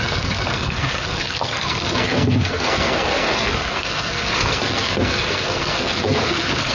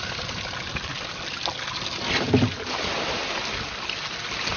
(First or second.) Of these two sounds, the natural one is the second